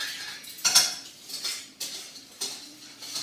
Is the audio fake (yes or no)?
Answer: no